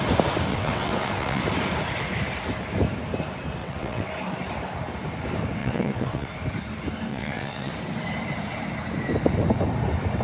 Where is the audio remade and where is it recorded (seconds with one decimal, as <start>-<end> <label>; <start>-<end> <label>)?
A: 0.0-0.5 recorded; 0.5-1.4 remade; 1.4-3.6 recorded; 3.6-4.1 remade; 4.1-5.6 recorded; 5.6-6.3 remade; 6.3-7.1 recorded; 7.1-7.7 remade; 7.7-10.2 recorded